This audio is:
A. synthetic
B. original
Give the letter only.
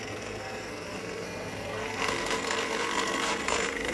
A